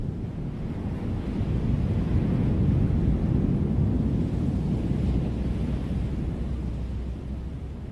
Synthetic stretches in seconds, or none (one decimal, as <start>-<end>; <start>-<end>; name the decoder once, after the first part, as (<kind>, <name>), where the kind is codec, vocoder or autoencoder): 6.1-6.7 (vocoder, BigVGAN v2)